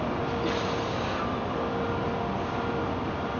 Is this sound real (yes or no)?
yes